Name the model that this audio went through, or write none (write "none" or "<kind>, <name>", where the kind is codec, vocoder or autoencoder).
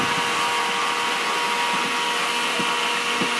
none